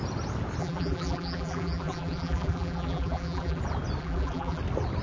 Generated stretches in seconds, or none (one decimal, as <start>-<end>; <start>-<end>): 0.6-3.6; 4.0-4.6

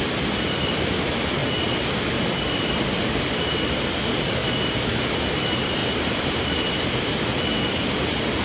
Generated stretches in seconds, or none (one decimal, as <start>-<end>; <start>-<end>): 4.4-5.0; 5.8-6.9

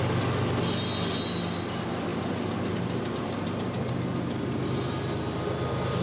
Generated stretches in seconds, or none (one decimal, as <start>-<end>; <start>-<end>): 2.1-3.9

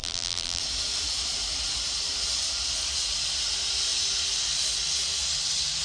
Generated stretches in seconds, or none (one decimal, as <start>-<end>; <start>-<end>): 0.0-0.6